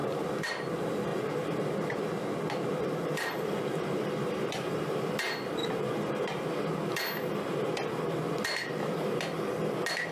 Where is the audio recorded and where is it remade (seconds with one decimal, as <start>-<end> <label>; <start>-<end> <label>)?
0.0-0.5 remade; 0.5-1.1 recorded; 1.1-5.1 remade; 5.1-5.6 recorded; 5.6-6.5 remade; 6.5-10.1 recorded